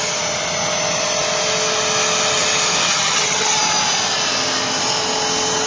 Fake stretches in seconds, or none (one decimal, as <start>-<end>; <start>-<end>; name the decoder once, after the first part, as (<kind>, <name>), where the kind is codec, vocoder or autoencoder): 2.9-3.6 (vocoder, HiFi-GAN)